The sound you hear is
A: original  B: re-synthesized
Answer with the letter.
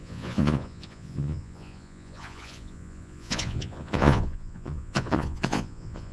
B